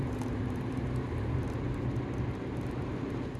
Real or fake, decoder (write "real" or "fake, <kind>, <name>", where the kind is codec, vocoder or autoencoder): real